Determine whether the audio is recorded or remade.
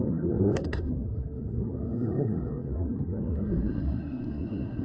remade